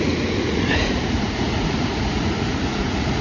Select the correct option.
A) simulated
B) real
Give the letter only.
A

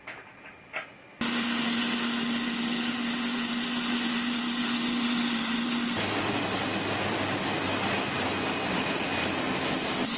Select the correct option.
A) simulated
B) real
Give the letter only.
B